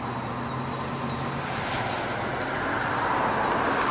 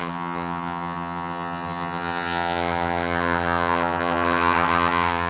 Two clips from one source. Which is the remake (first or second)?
second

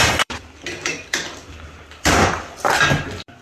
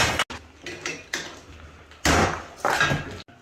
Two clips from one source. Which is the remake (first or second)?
first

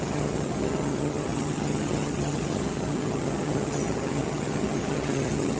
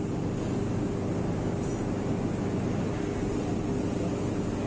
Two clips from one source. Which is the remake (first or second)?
first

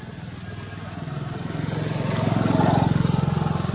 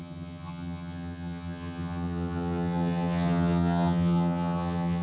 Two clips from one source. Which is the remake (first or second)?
second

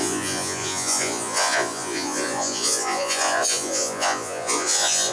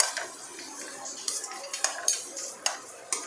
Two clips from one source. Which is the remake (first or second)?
first